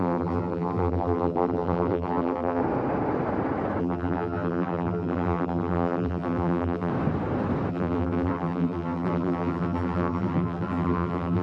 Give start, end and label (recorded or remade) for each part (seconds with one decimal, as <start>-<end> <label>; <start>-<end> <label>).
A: 0.0-2.6 remade; 2.6-3.8 recorded; 3.8-6.9 remade; 6.9-7.7 recorded; 7.7-11.4 remade